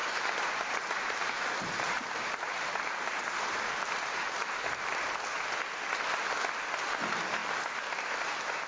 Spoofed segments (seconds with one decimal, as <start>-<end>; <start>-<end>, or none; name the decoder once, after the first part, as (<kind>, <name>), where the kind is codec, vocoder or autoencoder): 0.0-4.8 (vocoder, BigVGAN v2); 7.4-7.9